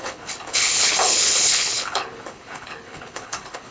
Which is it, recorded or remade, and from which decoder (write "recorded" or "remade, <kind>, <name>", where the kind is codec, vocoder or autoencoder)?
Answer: remade, codec, HILCodec